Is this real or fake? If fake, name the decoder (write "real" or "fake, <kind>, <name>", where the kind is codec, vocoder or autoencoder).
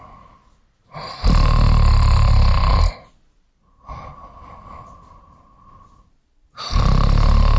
fake, vocoder, BigVGAN v2